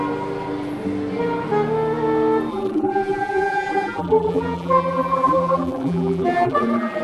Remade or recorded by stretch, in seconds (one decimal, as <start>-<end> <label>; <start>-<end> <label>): 0.0-2.5 recorded; 2.5-7.0 remade